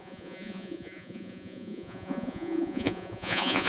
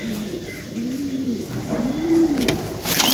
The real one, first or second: second